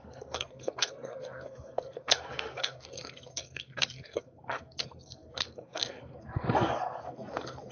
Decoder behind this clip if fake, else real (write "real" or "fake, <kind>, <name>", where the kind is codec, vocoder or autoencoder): fake, codec, SNAC